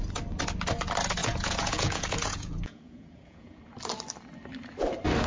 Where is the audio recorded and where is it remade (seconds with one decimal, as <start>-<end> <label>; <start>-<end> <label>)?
0.0-1.2 recorded; 1.2-3.6 remade; 3.6-5.3 recorded